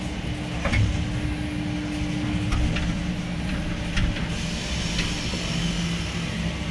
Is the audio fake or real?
real